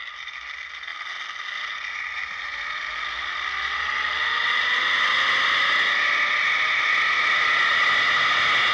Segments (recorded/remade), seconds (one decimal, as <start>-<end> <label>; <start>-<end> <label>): 0.0-8.7 recorded